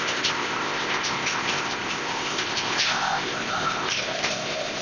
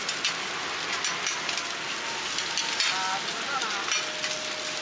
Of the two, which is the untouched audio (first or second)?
second